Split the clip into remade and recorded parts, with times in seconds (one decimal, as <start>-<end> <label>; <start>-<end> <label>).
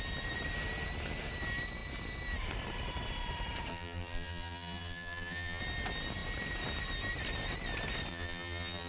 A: 0.0-3.7 recorded; 3.7-5.6 remade; 5.6-8.1 recorded; 8.1-8.9 remade